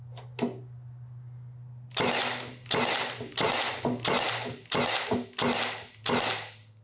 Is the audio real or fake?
real